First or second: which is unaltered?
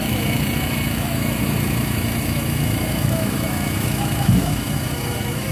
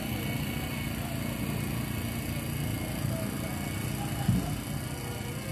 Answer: second